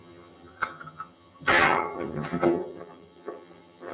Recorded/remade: remade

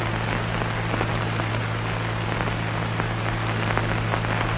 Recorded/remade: recorded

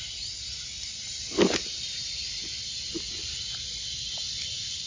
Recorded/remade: recorded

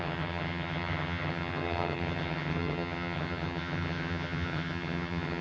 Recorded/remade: remade